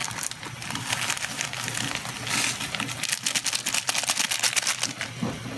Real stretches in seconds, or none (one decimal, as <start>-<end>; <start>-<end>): 0.0-5.6